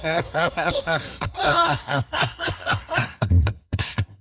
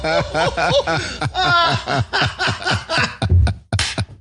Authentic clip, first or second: second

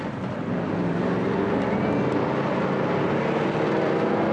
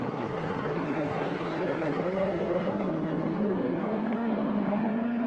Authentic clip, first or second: first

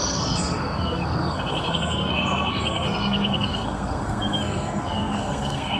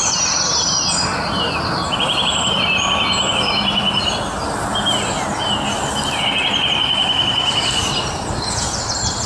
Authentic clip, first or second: second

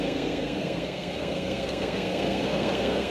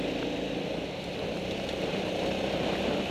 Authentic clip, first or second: second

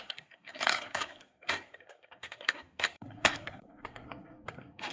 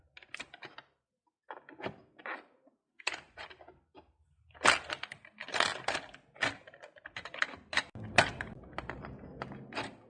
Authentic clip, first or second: second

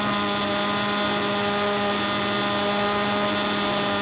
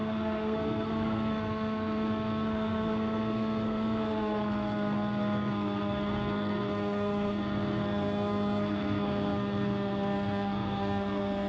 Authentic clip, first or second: first